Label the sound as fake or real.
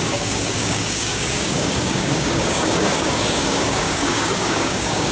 fake